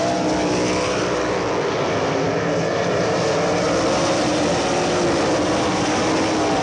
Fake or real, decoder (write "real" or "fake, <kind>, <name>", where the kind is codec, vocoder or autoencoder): real